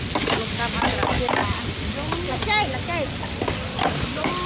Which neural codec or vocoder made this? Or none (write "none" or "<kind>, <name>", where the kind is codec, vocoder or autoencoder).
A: none